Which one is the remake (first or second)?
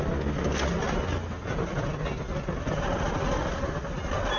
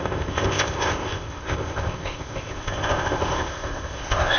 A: second